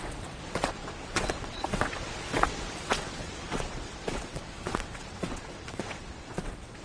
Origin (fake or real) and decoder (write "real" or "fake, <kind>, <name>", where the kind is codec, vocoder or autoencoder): fake, vocoder, WaveNeXt